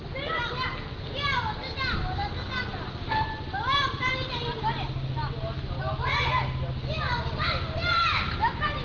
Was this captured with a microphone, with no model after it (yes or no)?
yes